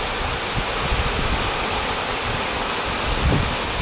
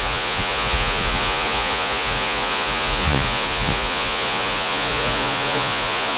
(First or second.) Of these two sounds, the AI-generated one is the second